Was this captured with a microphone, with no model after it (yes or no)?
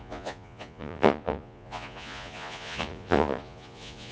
no